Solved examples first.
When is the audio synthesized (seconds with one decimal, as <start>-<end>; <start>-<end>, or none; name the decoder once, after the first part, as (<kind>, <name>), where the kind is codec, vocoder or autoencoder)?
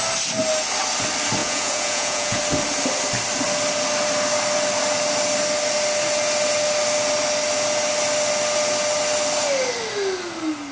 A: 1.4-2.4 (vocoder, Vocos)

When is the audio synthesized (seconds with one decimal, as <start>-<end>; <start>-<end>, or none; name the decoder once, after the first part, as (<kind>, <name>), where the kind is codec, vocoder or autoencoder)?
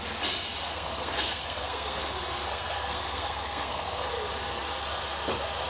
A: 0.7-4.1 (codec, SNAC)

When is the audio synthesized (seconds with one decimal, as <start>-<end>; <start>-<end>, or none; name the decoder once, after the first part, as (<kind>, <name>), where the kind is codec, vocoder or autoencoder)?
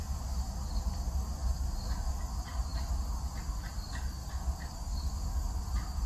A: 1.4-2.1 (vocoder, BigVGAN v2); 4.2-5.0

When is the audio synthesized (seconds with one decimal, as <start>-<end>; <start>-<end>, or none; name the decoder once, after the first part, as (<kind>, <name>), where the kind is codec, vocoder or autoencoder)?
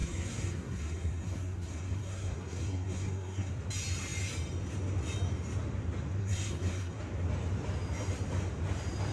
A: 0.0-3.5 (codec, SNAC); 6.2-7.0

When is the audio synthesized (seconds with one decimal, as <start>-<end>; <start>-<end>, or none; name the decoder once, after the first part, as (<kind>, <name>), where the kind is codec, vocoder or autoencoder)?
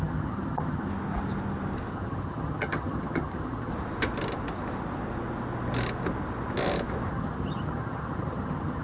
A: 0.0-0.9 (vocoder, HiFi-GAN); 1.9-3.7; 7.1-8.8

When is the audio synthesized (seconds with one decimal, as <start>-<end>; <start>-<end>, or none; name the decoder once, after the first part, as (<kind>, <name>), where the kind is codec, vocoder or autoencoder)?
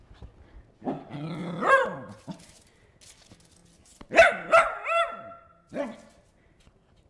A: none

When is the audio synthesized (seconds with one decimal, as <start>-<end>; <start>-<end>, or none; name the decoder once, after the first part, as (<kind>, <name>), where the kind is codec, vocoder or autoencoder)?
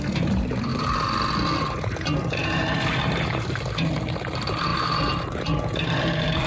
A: 0.0-0.7 (vocoder, BigVGAN v2); 1.6-6.5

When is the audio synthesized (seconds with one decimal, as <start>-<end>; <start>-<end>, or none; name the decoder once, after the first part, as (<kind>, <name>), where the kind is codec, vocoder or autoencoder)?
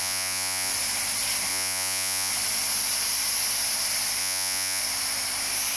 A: 0.0-0.7 (vocoder, Vocos); 1.5-2.3; 4.2-4.8